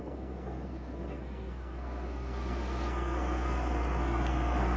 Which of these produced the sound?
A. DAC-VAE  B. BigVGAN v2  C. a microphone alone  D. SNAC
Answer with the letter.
D